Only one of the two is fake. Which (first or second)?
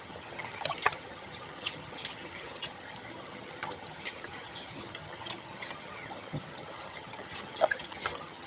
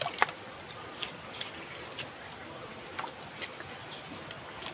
first